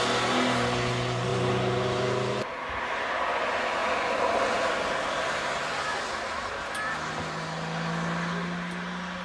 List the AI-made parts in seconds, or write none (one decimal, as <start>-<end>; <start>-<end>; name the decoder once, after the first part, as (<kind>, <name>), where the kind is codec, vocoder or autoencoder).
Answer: none